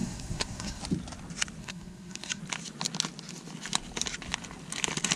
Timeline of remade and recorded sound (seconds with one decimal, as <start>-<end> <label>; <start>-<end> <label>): 0.0-0.8 remade; 0.8-1.6 recorded; 1.6-2.4 remade; 2.4-5.2 recorded